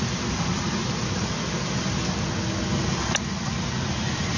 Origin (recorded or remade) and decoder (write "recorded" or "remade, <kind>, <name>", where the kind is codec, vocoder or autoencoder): recorded